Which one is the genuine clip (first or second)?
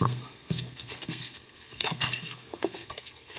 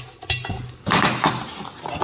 second